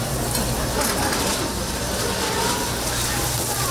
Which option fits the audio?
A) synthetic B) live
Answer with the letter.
B